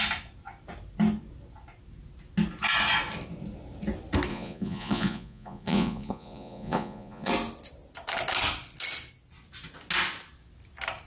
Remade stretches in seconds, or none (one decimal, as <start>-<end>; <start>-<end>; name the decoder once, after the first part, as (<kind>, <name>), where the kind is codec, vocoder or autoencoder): 4.3-7.3 (vocoder, Vocos)